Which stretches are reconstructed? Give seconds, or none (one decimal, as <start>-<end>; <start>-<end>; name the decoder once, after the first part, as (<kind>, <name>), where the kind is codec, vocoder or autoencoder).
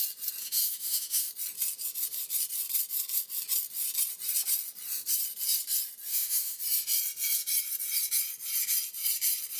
0.4-1.3 (autoencoder, DAC-VAE); 6.1-6.6